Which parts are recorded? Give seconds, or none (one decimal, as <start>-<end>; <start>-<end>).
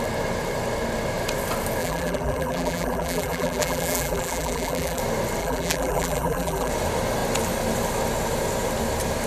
0.0-1.8; 5.0-5.4; 6.7-9.3